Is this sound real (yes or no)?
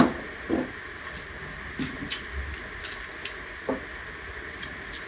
yes